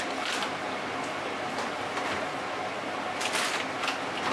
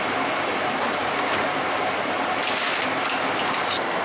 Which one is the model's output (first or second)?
second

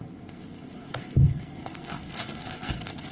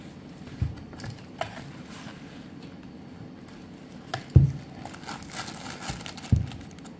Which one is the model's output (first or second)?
first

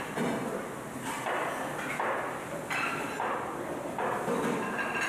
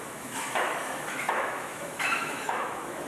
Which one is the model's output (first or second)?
second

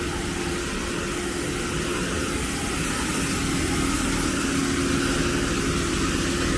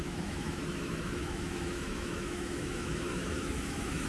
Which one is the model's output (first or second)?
second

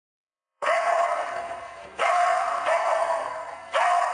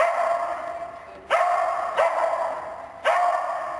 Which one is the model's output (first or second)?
first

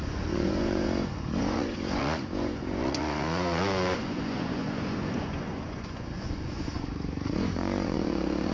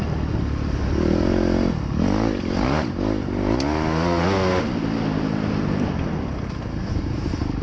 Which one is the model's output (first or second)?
first